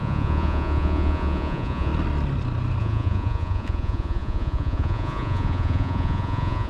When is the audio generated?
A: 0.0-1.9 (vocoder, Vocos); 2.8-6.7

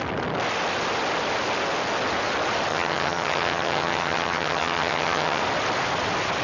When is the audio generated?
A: 2.7-5.4 (vocoder, HiFi-GAN)

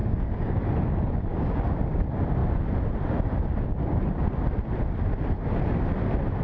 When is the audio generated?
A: 0.0-0.6 (codec, DAC); 1.3-2.0

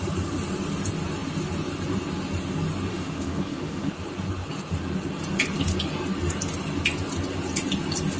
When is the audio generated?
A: 2.9-3.9 (autoencoder, DAC-VAE)

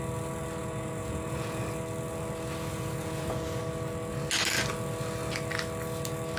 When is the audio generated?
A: 0.6-1.6 (vocoder, Vocos); 2.7-3.6

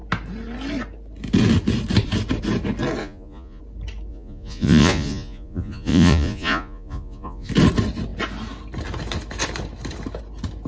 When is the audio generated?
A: 3.0-3.6 (vocoder, Vocos); 4.1-7.5

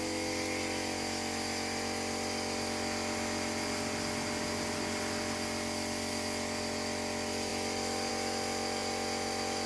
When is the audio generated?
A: none